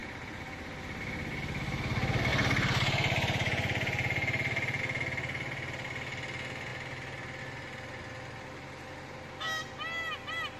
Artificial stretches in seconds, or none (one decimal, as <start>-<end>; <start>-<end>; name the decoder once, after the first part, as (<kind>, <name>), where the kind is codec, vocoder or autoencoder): 2.3-4.8 (vocoder, BigVGAN v2)